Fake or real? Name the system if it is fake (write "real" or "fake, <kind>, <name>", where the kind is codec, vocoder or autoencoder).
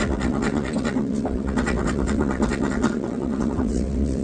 fake, vocoder, WaveNeXt